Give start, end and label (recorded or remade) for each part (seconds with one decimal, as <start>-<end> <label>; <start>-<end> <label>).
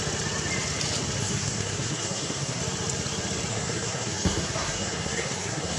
0.0-1.2 recorded; 1.2-2.6 remade; 2.6-3.5 recorded; 3.5-5.8 remade